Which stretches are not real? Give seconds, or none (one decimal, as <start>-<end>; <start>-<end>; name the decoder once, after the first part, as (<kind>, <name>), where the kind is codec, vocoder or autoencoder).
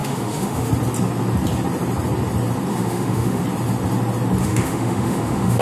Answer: 0.0-0.7 (autoencoder, DAC-VAE); 2.7-3.4; 4.4-5.6